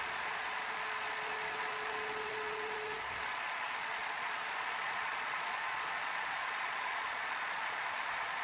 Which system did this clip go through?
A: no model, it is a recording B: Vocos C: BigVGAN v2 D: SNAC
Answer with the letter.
B